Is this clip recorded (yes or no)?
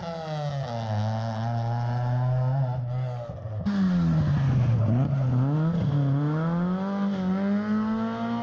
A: yes